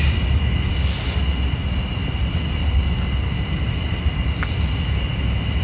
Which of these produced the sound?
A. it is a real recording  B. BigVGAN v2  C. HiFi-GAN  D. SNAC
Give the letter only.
A